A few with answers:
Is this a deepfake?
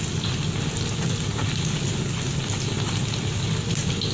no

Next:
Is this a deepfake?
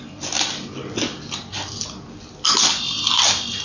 no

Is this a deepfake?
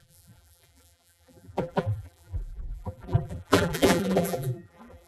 yes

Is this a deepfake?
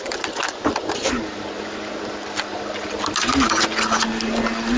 no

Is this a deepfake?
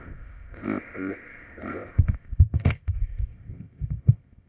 yes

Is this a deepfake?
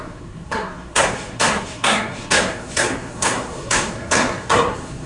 yes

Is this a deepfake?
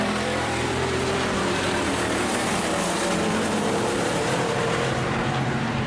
yes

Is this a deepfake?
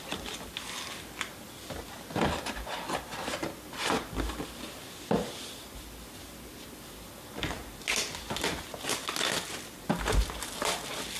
no